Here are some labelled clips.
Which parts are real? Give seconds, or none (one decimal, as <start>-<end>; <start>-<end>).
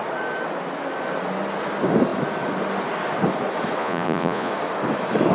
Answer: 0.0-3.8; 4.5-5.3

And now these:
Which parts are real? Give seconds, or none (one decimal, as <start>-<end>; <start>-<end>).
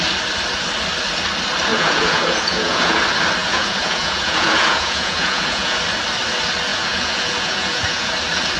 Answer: 0.0-1.7; 3.0-3.4; 5.8-6.7; 8.1-8.6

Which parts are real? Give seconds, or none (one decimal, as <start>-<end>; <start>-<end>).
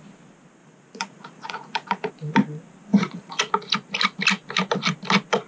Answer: 0.0-0.6; 2.1-2.9; 3.4-5.5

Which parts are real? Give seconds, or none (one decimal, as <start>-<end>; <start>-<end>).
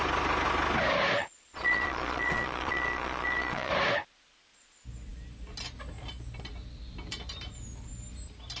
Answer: 0.0-1.2; 3.7-8.6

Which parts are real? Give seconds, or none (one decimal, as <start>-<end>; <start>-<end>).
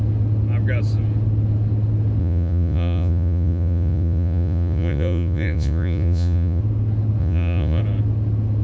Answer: 0.0-2.2; 6.6-7.2; 7.8-8.6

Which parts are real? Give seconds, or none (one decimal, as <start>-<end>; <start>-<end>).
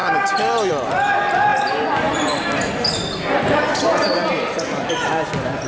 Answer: 0.0-5.7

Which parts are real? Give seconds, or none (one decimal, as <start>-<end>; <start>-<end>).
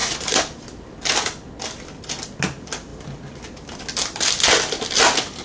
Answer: 0.0-5.4